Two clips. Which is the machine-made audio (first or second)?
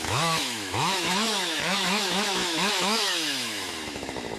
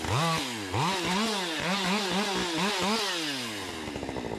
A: first